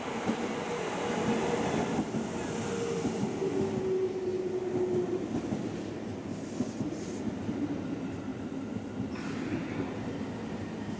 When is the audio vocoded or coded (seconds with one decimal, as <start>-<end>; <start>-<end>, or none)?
none